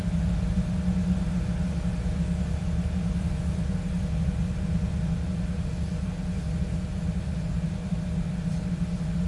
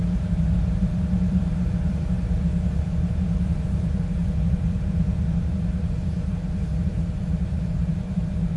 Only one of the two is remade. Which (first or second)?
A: second